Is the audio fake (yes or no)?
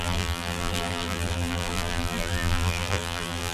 yes